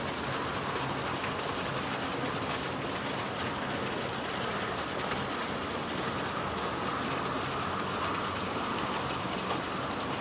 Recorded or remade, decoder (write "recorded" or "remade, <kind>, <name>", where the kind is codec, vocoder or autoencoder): recorded